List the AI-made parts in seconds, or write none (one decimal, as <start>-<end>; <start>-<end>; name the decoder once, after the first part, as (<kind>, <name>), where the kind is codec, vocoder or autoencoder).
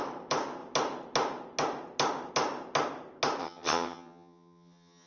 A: 3.4-5.1 (vocoder, HiFi-GAN)